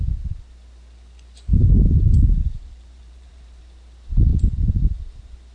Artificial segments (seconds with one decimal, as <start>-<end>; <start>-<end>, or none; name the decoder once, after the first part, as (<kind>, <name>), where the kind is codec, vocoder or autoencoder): 1.5-3.6 (vocoder, BigVGAN v2)